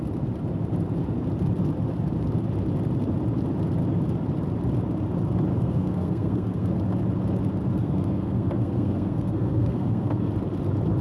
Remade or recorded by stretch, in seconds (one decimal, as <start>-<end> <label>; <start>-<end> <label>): 0.0-5.5 recorded; 5.5-6.8 remade; 6.8-7.7 recorded; 7.7-10.3 remade; 10.3-11.0 recorded